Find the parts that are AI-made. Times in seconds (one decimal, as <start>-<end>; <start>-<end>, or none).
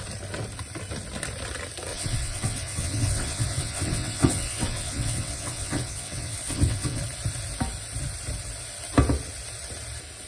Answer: 1.9-7.0